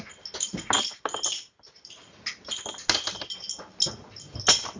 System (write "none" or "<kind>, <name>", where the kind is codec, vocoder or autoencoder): none